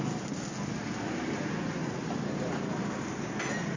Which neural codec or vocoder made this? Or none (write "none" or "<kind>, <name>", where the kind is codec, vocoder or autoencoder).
none